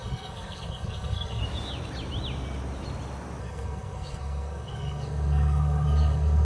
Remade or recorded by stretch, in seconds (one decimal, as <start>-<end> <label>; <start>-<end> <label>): 0.0-1.4 remade; 1.4-3.4 recorded; 3.4-6.4 remade